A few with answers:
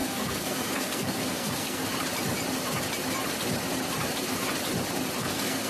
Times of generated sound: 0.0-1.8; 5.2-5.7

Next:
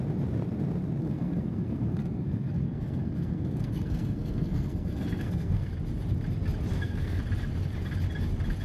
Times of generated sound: 1.0-5.7; 6.7-7.2

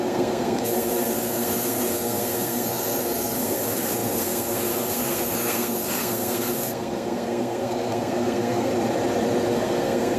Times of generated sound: 0.0-8.7; 9.5-10.2

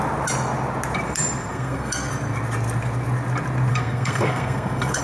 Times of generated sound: 1.5-2.1; 3.7-5.0

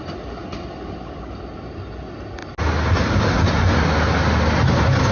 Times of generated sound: none

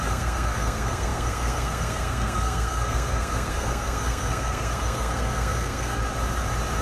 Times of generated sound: 0.0-6.0

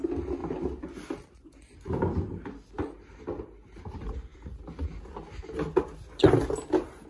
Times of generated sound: none